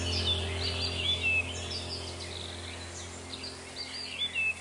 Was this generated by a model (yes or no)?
no